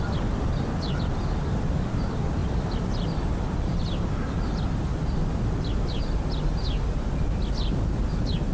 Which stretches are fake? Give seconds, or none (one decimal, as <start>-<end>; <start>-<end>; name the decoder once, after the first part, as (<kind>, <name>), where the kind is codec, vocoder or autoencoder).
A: none